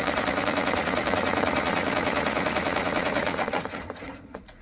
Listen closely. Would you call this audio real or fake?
fake